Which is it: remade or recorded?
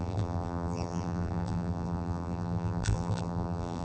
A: remade